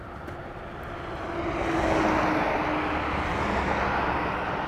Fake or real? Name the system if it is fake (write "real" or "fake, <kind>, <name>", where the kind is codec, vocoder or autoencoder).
real